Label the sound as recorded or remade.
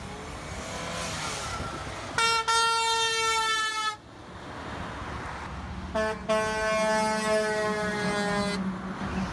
recorded